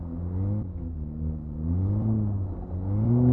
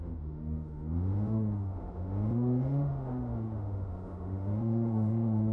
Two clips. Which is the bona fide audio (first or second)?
first